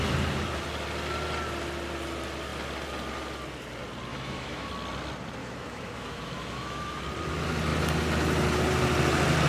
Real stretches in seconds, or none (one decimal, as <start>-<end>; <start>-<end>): 0.0-4.1; 4.7-5.4; 7.0-9.5